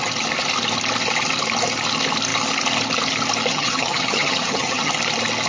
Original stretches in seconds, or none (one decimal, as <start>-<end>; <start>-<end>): 0.0-3.5; 4.9-5.5